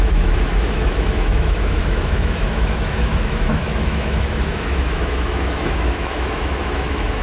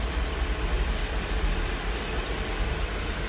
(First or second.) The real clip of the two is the second